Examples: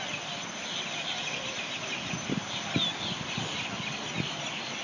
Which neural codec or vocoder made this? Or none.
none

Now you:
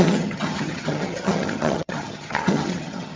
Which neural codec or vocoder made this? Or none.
vocoder, HiFi-GAN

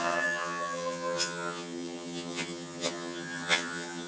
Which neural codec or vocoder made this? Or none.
vocoder, HiFi-GAN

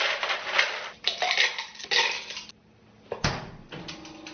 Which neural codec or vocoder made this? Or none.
none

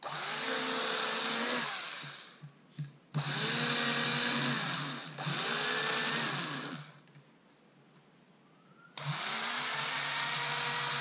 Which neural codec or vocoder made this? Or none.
none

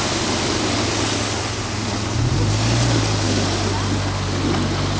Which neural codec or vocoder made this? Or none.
none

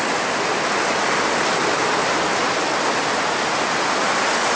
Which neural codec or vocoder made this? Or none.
none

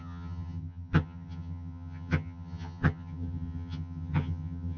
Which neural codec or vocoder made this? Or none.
vocoder, HiFi-GAN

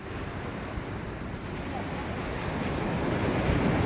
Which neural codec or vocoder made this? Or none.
none